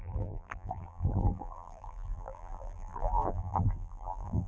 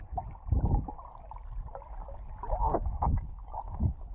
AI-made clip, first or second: first